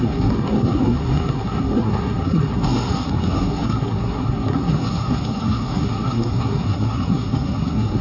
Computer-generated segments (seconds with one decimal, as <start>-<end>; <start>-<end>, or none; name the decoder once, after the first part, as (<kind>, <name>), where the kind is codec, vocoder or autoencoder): 0.0-8.0 (codec, SNAC)